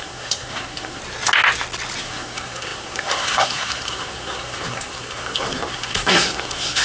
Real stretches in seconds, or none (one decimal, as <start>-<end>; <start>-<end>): 1.0-2.0

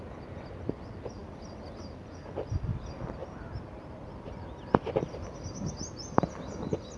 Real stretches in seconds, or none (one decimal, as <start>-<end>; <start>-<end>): 0.0-1.2; 2.3-3.2; 6.6-7.0

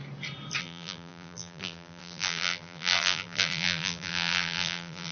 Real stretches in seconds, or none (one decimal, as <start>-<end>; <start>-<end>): 0.0-0.6

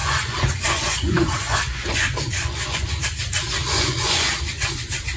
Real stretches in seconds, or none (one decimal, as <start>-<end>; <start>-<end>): 2.9-3.6; 4.3-5.2

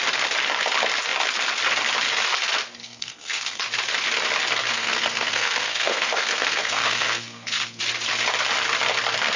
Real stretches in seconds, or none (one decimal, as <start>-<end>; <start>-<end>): 0.0-2.8; 3.6-4.7; 7.8-9.4

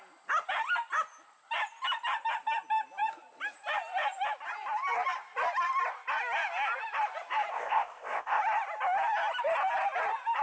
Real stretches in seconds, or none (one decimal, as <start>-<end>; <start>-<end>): 0.0-7.5; 8.4-10.4